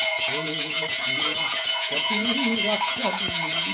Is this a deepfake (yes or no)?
yes